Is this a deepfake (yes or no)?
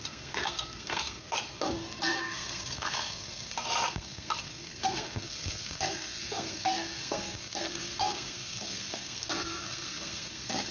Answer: yes